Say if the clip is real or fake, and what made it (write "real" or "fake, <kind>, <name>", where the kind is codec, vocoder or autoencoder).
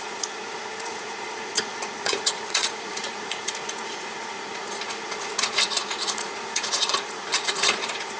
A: fake, vocoder, Vocos